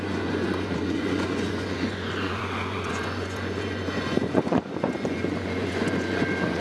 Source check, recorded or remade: remade